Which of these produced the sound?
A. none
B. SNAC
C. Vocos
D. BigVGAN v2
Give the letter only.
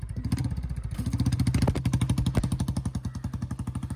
A